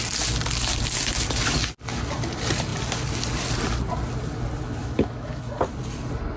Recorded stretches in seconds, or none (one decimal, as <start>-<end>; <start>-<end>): 0.0-4.8; 5.4-6.4